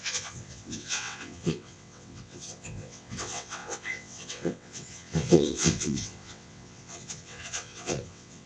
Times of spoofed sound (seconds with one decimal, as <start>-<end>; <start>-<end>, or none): 0.0-8.5